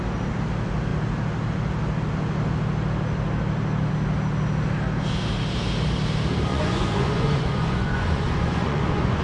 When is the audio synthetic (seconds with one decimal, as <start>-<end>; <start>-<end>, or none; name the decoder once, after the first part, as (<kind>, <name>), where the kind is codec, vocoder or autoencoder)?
6.5-9.2 (vocoder, Vocos)